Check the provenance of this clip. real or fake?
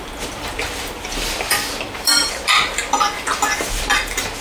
fake